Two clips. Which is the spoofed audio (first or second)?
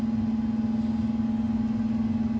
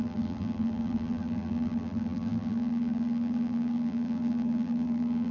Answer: second